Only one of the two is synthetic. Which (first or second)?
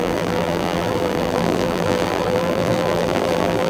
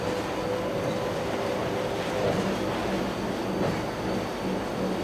first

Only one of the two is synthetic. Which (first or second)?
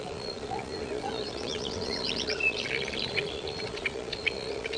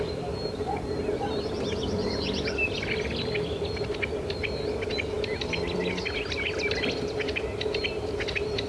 first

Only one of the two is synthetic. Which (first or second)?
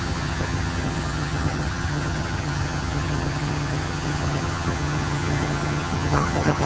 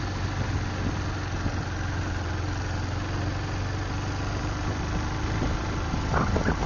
first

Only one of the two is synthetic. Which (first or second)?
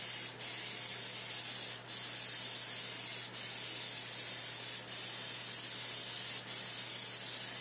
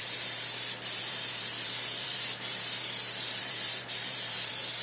second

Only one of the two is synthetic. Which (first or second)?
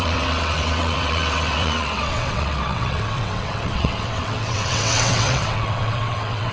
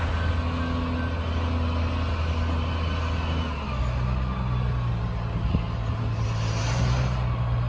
first